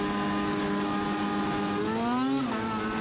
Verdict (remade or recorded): recorded